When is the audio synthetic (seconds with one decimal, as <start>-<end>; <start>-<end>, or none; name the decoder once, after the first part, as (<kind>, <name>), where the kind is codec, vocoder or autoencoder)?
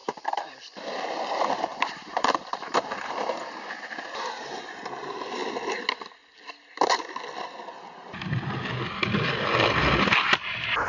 0.0-5.4 (vocoder, BigVGAN v2); 10.5-10.9